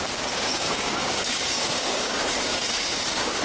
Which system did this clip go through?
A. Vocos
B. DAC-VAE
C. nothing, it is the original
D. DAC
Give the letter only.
D